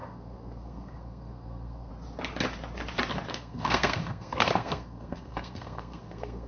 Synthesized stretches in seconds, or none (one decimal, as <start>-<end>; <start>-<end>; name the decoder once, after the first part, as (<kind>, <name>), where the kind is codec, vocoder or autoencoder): 0.0-1.9 (codec, SNAC); 3.3-6.5